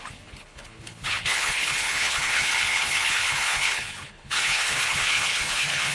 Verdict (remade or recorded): remade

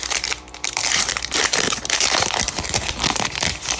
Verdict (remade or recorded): remade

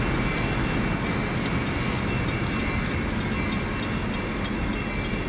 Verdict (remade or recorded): recorded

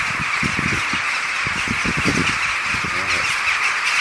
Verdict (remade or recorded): recorded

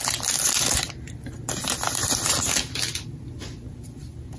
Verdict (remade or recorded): recorded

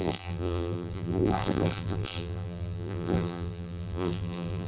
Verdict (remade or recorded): remade